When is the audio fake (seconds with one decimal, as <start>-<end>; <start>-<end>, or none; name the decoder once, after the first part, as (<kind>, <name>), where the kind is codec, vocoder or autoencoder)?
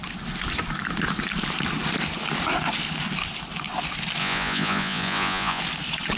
4.2-5.6 (vocoder, Vocos)